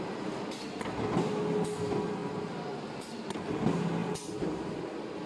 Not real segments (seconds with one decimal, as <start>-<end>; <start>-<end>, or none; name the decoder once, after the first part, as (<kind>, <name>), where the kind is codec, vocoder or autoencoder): 2.2-2.8 (vocoder, BigVGAN v2); 4.0-4.7